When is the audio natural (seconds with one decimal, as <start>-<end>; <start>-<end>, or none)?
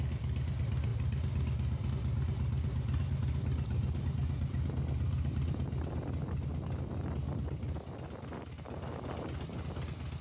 0.0-10.2